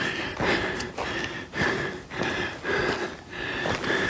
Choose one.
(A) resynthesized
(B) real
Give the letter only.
B